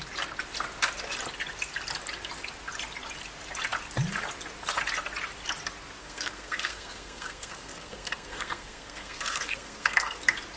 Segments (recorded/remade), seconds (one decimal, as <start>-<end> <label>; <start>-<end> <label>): 0.0-6.0 recorded; 6.0-10.2 remade; 10.2-10.6 recorded